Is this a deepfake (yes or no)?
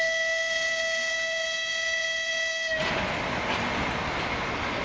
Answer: no